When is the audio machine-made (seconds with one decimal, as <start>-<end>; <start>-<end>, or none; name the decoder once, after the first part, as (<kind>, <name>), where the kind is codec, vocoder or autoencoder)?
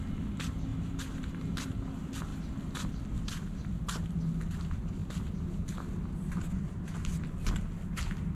0.7-1.7 (vocoder, BigVGAN v2); 2.3-2.9